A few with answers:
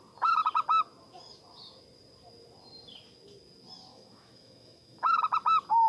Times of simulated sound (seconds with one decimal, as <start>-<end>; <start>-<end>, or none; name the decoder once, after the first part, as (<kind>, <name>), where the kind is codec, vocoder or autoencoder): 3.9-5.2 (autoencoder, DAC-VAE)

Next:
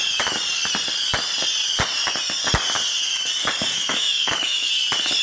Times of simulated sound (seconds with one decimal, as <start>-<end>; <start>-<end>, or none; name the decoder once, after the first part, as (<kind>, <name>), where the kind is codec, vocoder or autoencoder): 3.7-4.7 (autoencoder, DAC-VAE)

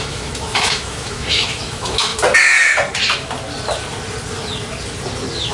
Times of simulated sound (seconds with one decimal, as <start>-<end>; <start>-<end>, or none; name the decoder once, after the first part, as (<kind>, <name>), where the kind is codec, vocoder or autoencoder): 0.0-2.1 (autoencoder, DAC-VAE)

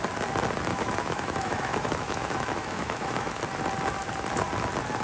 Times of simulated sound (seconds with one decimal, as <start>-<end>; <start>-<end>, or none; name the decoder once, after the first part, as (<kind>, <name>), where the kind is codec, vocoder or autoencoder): 0.7-3.4 (autoencoder, DAC-VAE)

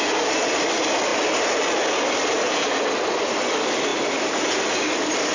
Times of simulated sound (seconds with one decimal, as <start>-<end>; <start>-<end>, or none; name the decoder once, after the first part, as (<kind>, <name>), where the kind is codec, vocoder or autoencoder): none